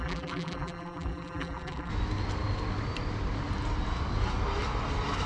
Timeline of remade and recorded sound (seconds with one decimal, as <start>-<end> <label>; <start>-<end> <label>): 0.0-1.9 remade; 1.9-5.3 recorded